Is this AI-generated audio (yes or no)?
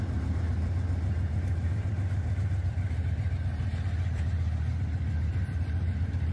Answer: yes